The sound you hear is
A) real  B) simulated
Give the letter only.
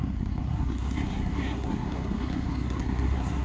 B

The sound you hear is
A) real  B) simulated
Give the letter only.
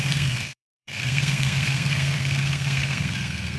B